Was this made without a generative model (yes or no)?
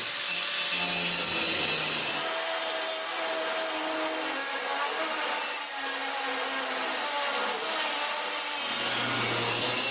yes